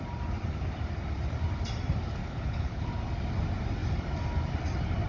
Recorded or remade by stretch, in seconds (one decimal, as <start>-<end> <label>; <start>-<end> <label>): 0.0-2.2 recorded; 2.2-2.9 remade; 2.9-5.1 recorded